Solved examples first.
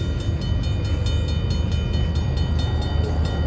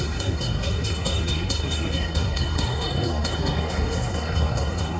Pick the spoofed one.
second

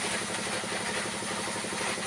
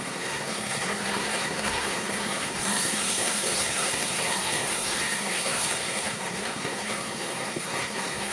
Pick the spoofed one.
second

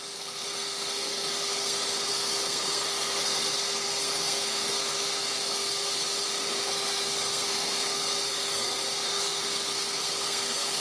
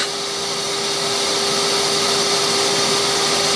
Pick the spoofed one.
first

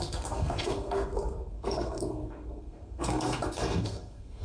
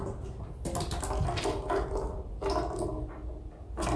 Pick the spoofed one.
first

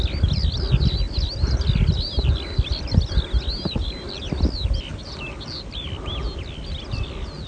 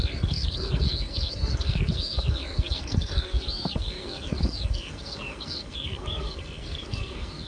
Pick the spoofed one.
second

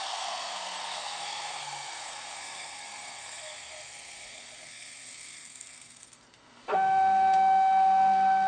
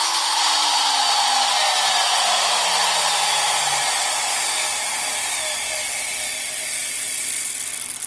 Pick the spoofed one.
first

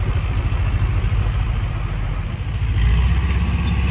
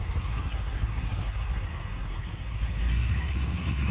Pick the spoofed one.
second